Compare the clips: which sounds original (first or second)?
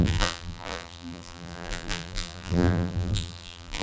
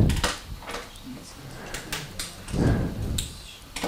second